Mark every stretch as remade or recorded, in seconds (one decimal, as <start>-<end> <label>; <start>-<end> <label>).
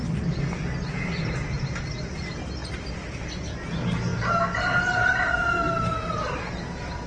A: 0.0-7.1 recorded